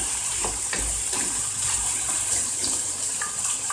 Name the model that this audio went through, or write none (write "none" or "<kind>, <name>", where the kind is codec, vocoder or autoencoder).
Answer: vocoder, BigVGAN v2